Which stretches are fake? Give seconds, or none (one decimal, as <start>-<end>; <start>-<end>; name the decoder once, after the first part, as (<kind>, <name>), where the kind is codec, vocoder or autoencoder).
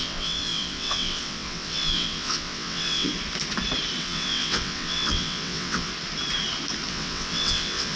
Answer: 0.0-3.1 (vocoder, WaveNeXt); 4.0-5.9; 6.9-8.0